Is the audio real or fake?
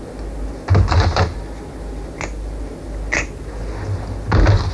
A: real